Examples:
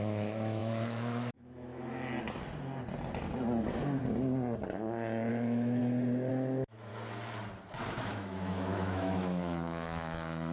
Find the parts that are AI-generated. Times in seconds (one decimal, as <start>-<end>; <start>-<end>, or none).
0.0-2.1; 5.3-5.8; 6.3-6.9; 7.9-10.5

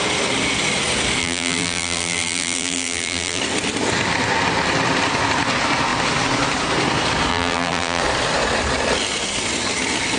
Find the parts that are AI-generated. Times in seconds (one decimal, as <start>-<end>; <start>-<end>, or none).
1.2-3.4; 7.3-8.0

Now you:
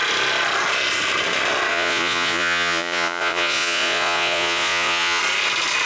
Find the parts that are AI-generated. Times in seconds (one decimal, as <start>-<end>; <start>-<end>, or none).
1.7-5.2

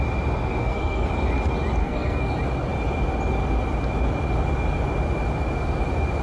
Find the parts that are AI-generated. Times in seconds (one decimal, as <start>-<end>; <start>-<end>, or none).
0.6-1.1; 1.8-2.3

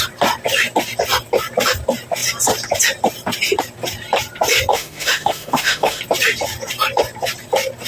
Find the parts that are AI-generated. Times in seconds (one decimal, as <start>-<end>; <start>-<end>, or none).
4.7-6.0

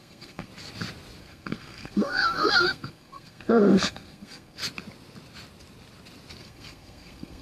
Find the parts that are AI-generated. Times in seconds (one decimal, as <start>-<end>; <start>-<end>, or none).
0.0-0.5; 1.2-4.6; 6.4-7.4

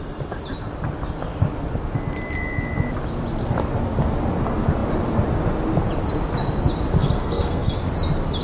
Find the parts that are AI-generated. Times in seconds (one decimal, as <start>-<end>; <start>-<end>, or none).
7.0-7.7

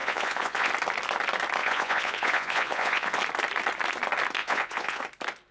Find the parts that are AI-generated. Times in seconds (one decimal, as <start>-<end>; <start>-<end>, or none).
0.0-0.7; 1.6-3.2; 4.4-5.0